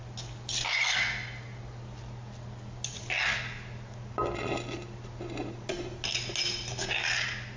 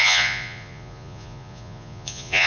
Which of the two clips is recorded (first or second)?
first